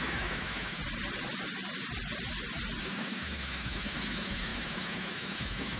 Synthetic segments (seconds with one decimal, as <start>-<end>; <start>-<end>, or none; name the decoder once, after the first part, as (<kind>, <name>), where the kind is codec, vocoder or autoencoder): 0.0-0.8 (autoencoder, DAC-VAE); 2.8-5.8